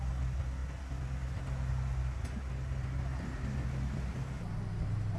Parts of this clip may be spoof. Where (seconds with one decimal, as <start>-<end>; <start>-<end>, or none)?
none